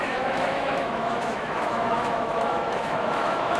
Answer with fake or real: fake